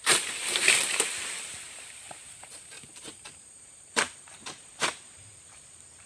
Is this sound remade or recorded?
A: remade